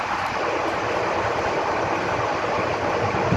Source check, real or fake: real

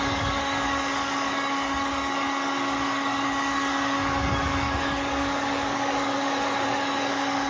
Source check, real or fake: fake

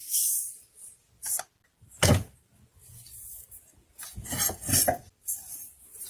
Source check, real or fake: real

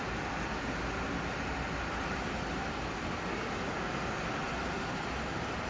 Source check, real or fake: real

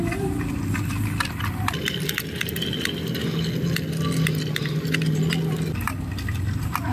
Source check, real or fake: real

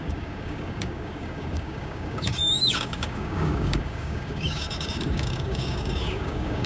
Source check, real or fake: fake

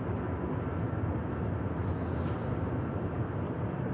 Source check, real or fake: real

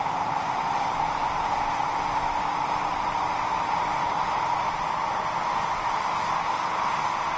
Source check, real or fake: real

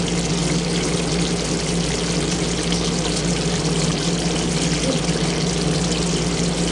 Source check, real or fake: real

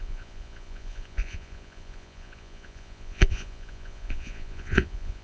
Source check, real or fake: fake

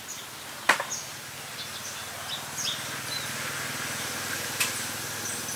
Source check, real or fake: real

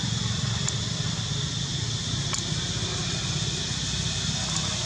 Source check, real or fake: real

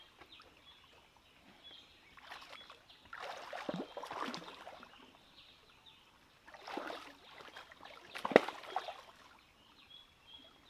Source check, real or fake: real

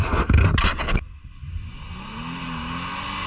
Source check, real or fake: real